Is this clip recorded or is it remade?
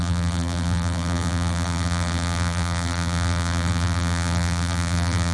remade